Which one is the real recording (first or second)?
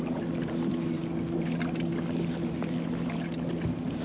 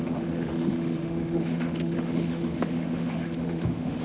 first